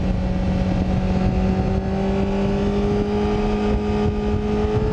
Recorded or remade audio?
recorded